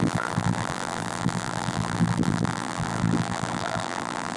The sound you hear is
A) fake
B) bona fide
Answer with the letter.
A